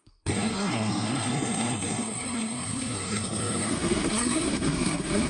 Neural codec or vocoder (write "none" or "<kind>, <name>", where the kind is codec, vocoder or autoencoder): codec, SNAC